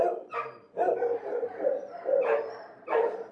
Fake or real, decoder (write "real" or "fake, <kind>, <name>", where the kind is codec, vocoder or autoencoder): fake, vocoder, BigVGAN v2